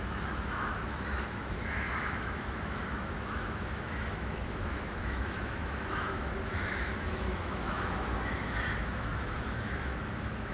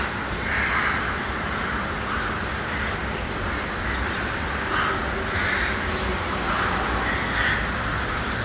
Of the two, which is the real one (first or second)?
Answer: second